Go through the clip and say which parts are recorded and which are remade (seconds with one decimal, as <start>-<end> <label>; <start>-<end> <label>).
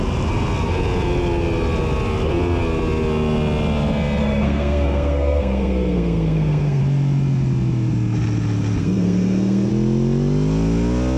0.0-4.2 recorded; 4.2-6.8 remade; 6.8-8.8 recorded; 8.8-9.7 remade; 9.7-11.2 recorded